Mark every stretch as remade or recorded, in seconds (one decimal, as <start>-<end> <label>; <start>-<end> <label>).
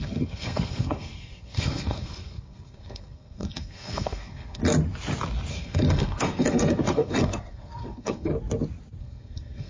0.0-4.6 remade; 4.6-5.5 recorded; 5.5-8.3 remade; 8.3-9.0 recorded; 9.0-9.7 remade